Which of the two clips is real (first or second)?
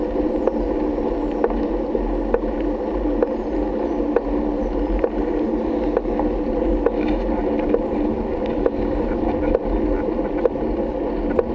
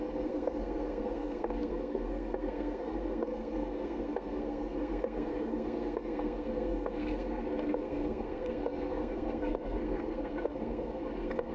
first